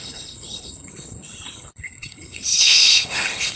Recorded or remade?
remade